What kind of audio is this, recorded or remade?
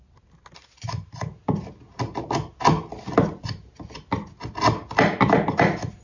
recorded